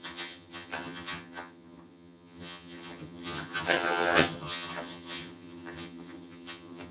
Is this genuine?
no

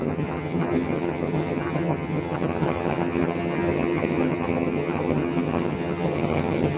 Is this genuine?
no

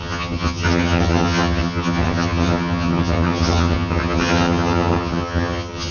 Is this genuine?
no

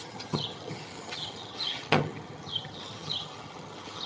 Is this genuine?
no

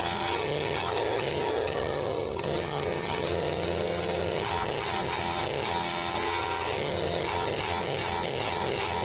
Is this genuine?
no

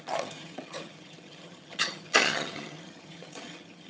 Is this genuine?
no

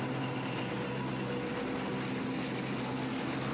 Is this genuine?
yes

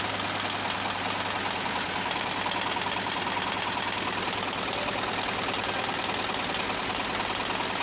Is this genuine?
yes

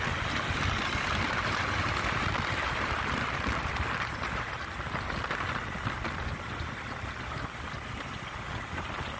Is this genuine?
yes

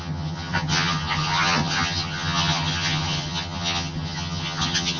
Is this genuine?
no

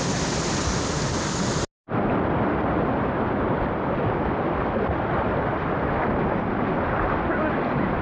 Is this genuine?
yes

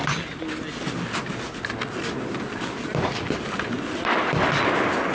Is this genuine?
yes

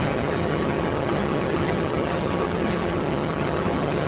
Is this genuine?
no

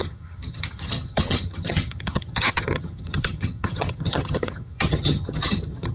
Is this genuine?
no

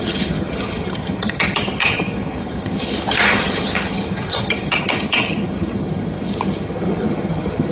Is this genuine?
no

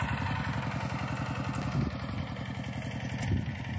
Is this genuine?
yes